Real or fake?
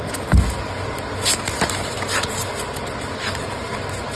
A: real